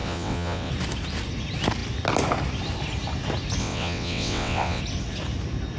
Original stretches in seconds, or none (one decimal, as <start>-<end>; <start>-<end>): 0.7-3.6; 4.8-5.8